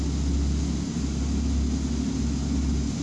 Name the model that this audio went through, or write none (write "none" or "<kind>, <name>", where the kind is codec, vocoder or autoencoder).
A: none